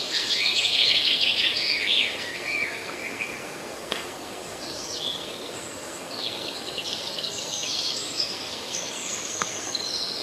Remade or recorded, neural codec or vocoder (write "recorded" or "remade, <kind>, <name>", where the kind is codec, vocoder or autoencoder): remade, codec, SNAC